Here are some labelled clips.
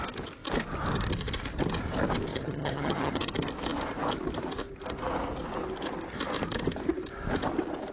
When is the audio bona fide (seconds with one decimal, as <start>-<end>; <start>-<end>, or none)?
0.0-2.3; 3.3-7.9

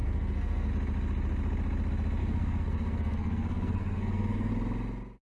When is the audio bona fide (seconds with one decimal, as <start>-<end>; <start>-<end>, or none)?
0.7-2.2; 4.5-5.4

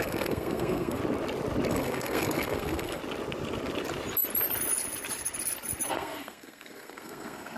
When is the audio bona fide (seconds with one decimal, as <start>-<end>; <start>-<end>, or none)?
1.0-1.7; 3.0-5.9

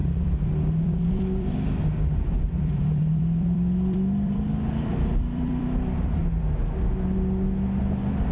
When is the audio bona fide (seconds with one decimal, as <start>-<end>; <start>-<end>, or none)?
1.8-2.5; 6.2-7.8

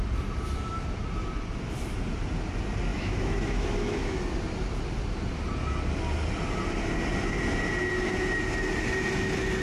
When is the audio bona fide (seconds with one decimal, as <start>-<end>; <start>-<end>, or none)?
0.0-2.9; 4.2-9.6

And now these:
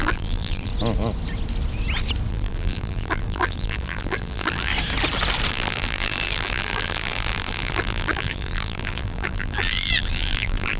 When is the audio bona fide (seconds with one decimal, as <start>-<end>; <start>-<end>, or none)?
0.7-2.3; 4.7-5.5